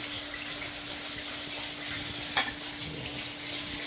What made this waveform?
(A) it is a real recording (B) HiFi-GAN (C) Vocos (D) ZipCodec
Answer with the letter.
A